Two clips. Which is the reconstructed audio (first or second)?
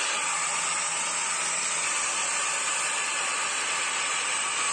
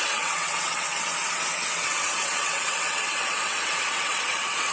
second